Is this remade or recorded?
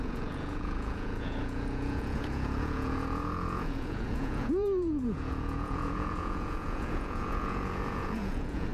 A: remade